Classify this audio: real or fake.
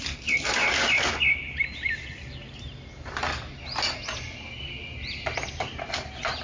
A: real